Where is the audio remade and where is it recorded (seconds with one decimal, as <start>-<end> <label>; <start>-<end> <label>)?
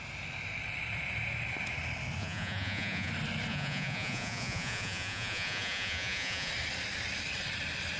0.0-2.2 recorded; 2.2-3.1 remade; 3.1-3.5 recorded; 3.5-6.5 remade; 6.5-8.0 recorded